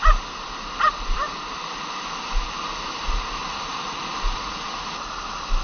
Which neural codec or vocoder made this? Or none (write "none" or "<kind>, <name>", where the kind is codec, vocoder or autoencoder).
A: none